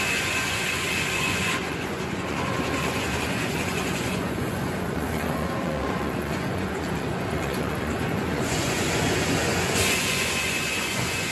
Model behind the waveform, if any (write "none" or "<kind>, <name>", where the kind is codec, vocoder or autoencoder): vocoder, Vocos